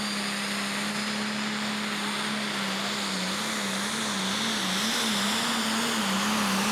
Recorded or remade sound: recorded